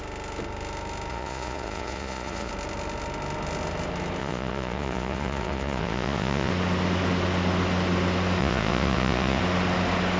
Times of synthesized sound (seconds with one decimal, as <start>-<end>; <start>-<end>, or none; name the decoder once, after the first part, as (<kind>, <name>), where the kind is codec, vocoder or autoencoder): 1.1-2.5 (vocoder, Vocos); 4.2-6.5; 8.4-9.4